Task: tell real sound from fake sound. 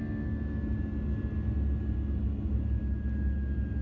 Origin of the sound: real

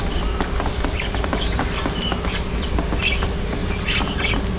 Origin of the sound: real